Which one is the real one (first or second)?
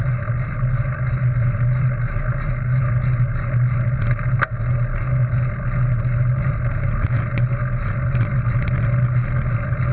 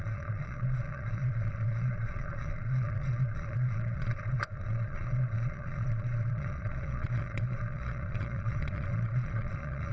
first